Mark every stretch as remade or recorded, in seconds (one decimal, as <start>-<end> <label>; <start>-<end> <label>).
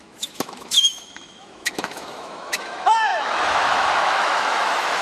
0.0-5.0 remade